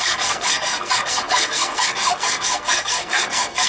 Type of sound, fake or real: fake